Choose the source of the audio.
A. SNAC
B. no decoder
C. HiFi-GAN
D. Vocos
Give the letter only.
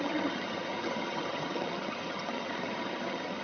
C